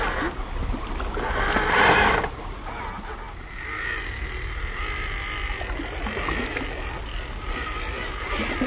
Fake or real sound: real